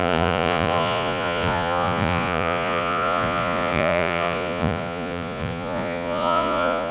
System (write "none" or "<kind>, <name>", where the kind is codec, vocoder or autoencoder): vocoder, Vocos